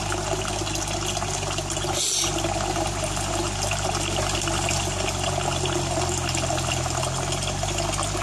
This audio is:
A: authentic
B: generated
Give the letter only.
A